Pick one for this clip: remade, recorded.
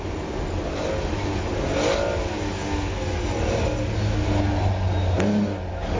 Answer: recorded